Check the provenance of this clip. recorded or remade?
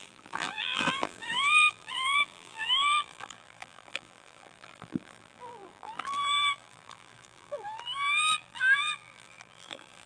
remade